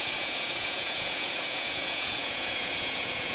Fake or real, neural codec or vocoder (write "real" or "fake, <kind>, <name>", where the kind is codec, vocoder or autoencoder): fake, vocoder, Vocos